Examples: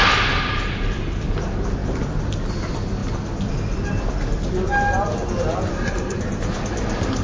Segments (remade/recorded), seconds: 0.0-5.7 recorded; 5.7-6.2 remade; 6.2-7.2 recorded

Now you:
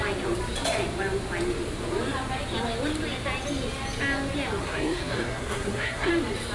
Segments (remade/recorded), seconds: 0.0-4.6 recorded; 4.6-6.1 remade; 6.1-6.5 recorded

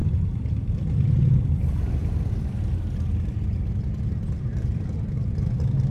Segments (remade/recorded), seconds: 0.0-1.6 remade; 1.6-2.0 recorded; 2.0-2.9 remade; 2.9-4.5 recorded; 4.5-5.3 remade; 5.3-5.9 recorded

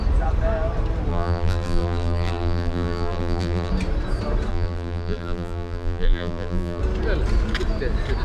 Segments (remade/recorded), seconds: 0.0-1.1 recorded; 1.1-3.7 remade; 3.7-4.5 recorded; 4.5-6.8 remade; 6.8-8.2 recorded

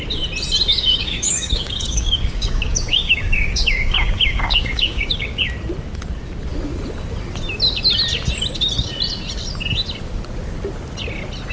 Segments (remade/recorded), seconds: 0.0-0.7 recorded; 0.7-5.4 remade; 5.4-11.5 recorded

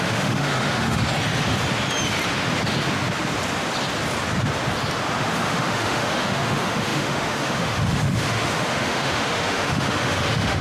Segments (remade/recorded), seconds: 0.0-1.0 remade; 1.0-5.2 recorded; 5.2-10.6 remade

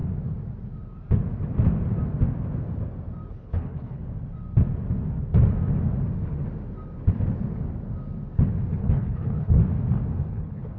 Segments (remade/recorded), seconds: 0.0-3.3 recorded; 3.3-4.0 remade; 4.0-8.8 recorded; 8.8-9.6 remade; 9.6-10.3 recorded; 10.3-10.8 remade